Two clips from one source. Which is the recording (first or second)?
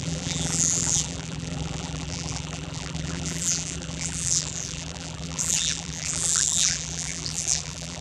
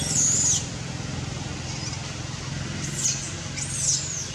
second